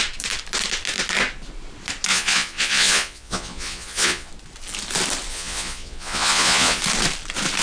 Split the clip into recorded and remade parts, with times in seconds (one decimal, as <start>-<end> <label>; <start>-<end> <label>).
0.0-2.1 recorded; 2.1-4.3 remade; 4.3-5.3 recorded; 5.3-6.8 remade; 6.8-7.6 recorded